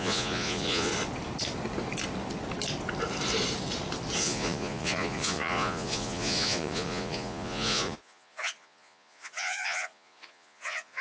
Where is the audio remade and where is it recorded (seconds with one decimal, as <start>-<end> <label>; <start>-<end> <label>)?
0.0-0.9 remade; 0.9-4.2 recorded; 4.2-11.0 remade